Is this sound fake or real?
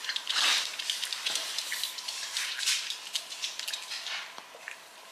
fake